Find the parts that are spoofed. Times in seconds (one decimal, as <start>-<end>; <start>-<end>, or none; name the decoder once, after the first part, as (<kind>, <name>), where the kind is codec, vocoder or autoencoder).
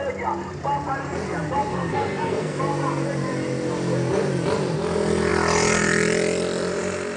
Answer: 1.7-2.6 (codec, SNAC)